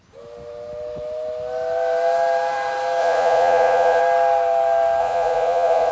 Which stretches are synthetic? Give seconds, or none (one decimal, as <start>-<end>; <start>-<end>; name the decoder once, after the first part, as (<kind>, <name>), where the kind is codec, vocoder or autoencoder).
3.0-4.0 (vocoder, Vocos); 5.0-5.9